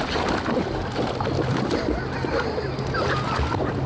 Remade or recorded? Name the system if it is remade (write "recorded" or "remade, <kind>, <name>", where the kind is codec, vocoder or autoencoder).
recorded